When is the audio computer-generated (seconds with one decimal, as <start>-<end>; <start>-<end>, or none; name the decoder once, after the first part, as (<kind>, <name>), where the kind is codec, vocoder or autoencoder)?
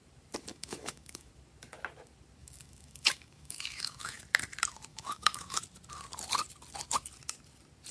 0.5-1.3 (autoencoder, DAC-VAE); 2.4-4.2; 4.9-5.6